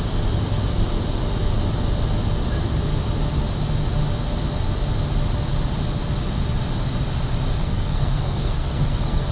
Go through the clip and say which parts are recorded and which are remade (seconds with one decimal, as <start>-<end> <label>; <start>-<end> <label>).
0.0-7.6 recorded; 7.6-9.3 remade